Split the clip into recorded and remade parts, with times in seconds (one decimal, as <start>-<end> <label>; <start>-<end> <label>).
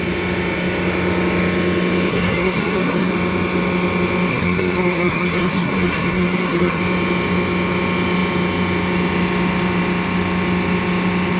0.0-2.1 recorded; 2.1-3.1 remade; 3.1-4.3 recorded; 4.3-6.8 remade; 6.8-11.4 recorded